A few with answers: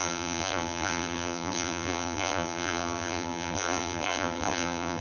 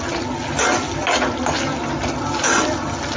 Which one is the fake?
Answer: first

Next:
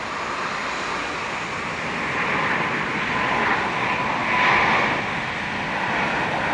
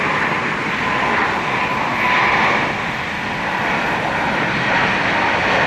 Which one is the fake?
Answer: first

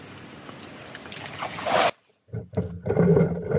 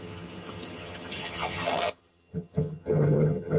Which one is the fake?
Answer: second